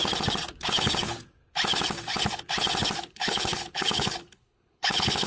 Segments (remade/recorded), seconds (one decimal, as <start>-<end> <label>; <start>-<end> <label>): 0.0-3.0 recorded; 3.0-5.3 remade